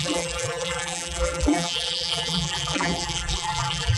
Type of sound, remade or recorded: remade